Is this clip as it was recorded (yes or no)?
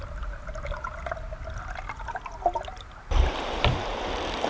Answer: yes